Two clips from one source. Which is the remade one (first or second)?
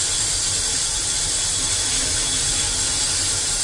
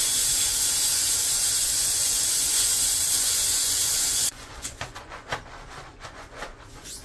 second